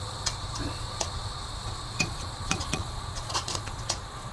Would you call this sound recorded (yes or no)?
no